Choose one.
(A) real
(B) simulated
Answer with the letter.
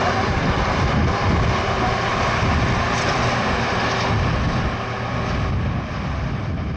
A